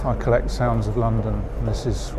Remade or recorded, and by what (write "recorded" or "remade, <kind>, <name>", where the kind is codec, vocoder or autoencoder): recorded